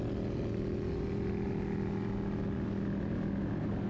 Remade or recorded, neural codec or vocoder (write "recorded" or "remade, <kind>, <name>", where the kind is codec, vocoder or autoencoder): recorded